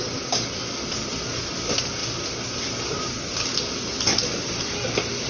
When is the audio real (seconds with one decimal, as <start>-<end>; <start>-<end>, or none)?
0.0-5.3